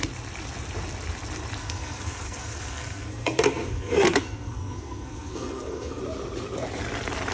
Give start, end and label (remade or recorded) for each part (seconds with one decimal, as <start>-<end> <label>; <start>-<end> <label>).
0.0-1.6 recorded; 1.6-6.0 remade; 6.0-7.3 recorded